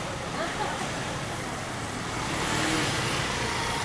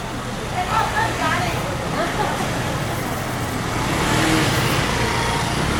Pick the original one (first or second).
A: second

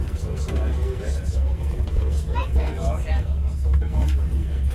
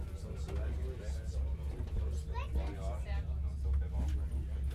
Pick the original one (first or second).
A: second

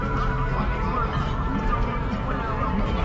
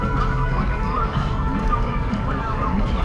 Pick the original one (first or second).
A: first